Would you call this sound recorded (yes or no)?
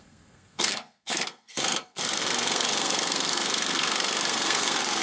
no